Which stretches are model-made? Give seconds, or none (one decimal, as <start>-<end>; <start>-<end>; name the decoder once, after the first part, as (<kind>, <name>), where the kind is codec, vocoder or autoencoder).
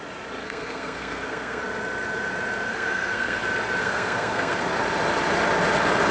0.4-1.6 (codec, SNAC); 2.7-3.4; 3.8-4.7